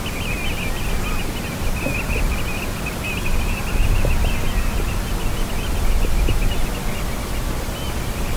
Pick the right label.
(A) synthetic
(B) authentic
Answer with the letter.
B